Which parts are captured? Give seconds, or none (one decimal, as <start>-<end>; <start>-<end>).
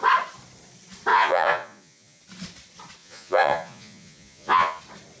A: 0.0-1.1; 2.2-3.0; 4.8-5.2